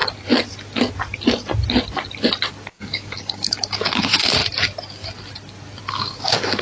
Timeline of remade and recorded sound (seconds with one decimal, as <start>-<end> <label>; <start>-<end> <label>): 0.0-2.7 recorded; 2.7-4.4 remade; 4.4-5.9 recorded; 5.9-6.6 remade